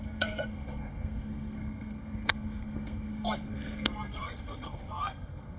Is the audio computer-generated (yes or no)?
yes